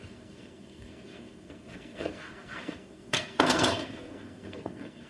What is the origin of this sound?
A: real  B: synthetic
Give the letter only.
B